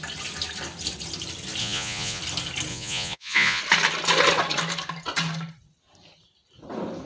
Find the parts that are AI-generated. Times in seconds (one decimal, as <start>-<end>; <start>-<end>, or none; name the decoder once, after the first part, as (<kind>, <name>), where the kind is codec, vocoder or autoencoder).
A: 1.6-2.2 (vocoder, Vocos); 2.7-3.6